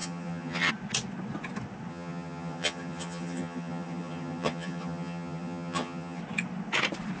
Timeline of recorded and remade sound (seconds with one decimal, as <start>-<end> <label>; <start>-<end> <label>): 0.0-0.7 remade; 0.7-1.9 recorded; 1.9-6.2 remade; 6.2-7.2 recorded